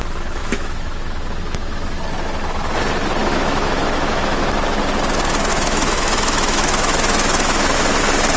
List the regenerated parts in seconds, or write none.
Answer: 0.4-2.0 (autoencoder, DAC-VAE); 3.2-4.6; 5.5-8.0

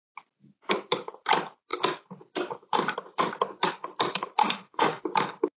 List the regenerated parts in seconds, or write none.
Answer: 4.4-5.0 (autoencoder, DAC-VAE)